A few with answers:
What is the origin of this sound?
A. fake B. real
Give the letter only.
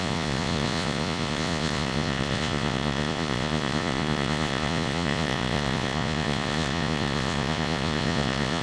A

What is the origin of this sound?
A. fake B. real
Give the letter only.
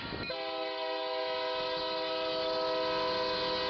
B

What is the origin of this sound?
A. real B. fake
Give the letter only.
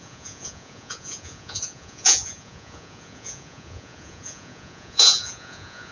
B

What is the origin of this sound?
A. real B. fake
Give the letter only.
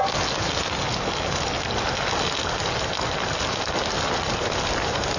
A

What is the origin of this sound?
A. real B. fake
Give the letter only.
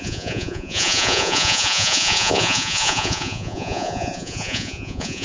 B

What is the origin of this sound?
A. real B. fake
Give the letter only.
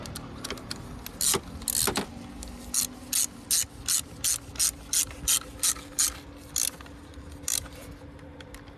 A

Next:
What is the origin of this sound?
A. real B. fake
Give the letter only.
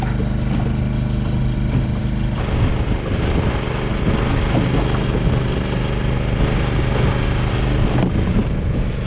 A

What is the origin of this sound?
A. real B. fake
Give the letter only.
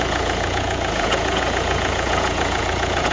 B